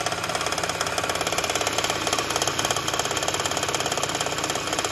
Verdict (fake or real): real